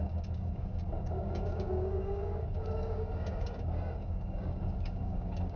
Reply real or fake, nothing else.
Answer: fake